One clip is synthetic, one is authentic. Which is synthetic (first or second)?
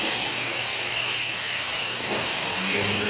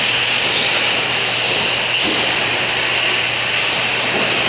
first